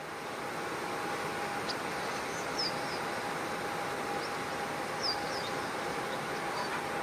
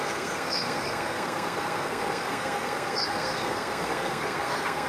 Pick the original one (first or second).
first